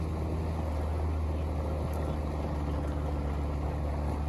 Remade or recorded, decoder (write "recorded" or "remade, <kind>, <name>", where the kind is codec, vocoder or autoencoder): recorded